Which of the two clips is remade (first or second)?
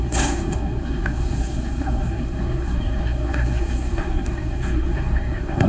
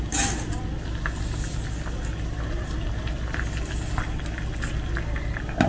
first